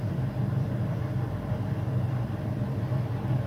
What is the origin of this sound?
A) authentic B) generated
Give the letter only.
B